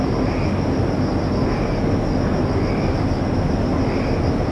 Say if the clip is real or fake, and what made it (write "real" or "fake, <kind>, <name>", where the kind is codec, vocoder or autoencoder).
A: real